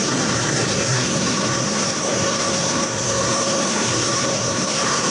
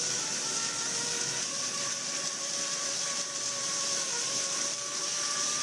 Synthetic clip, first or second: first